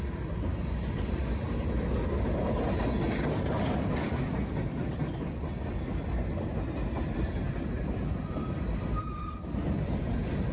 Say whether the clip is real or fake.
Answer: real